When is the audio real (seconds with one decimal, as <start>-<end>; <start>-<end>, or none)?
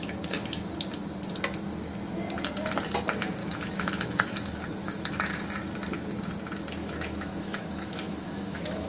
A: 0.0-3.4; 4.2-4.8; 5.4-6.8